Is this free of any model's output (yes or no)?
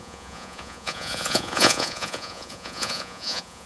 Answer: no